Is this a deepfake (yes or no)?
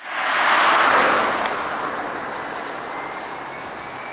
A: no